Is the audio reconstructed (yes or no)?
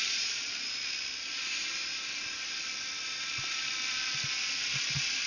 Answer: no